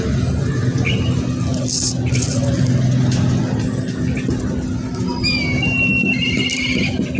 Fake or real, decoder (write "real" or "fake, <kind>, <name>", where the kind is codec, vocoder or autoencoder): real